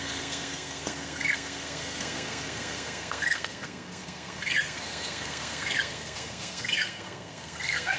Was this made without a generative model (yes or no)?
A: no